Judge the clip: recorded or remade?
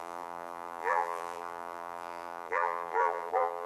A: remade